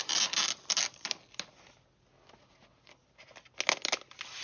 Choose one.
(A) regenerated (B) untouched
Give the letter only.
B